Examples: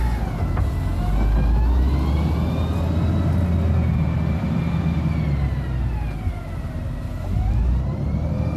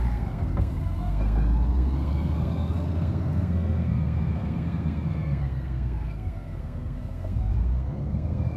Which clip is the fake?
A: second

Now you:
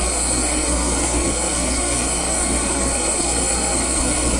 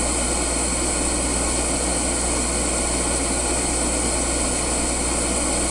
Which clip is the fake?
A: first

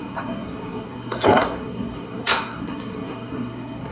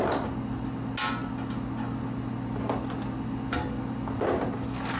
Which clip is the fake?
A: first